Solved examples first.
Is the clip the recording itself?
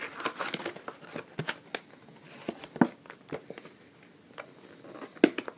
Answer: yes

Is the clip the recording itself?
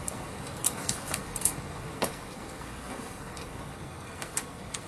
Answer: no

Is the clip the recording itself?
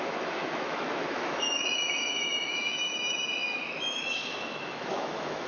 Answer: no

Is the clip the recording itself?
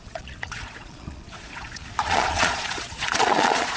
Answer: no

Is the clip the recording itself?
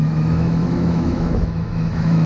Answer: no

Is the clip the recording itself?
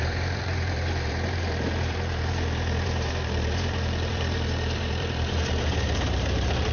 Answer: no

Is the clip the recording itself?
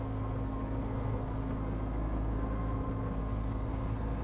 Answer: no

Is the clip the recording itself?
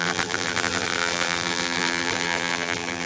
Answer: no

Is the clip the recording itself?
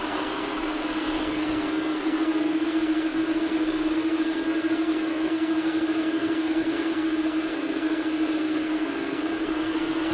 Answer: no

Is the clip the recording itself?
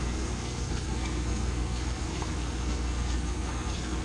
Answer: no